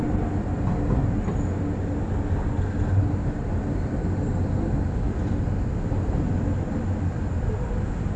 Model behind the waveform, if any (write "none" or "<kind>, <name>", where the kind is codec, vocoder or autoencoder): none